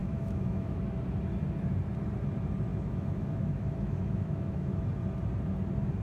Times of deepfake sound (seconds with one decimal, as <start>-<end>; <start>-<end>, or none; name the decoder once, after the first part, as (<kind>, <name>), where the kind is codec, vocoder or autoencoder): 0.0-0.8 (autoencoder, DAC-VAE); 2.7-4.8